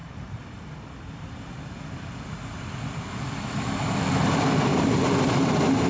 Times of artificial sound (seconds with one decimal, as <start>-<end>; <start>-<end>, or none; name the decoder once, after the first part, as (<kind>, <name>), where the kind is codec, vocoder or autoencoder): none